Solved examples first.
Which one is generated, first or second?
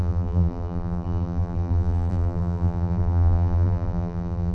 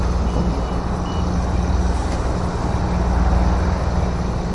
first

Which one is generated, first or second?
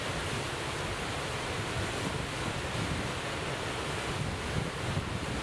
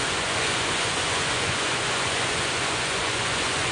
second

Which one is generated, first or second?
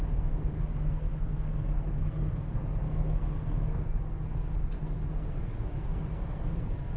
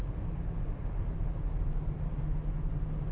first